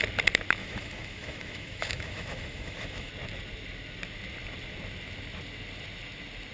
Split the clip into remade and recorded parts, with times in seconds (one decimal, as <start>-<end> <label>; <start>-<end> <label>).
0.0-0.6 recorded; 0.6-3.1 remade; 3.1-6.5 recorded